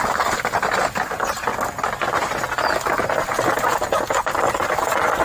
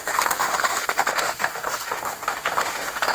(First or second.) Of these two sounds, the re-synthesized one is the second